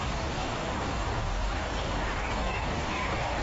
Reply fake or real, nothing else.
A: fake